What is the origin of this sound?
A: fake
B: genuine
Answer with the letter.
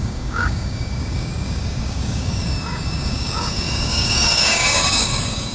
A